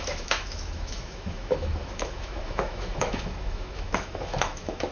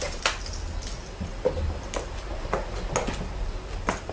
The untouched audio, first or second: second